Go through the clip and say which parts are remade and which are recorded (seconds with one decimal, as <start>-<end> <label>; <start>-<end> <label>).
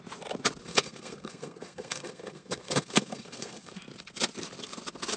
0.0-0.6 recorded; 0.6-3.7 remade; 3.7-5.2 recorded